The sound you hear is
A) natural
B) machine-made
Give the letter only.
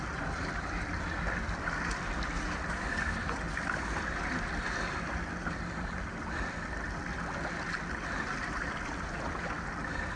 A